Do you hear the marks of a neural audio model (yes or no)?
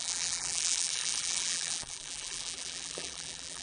yes